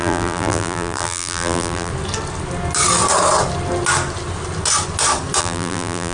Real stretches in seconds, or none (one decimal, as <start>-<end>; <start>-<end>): 1.9-5.4